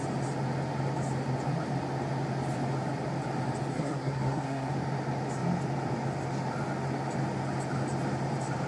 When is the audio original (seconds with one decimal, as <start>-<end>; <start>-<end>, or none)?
0.0-3.7; 4.7-8.7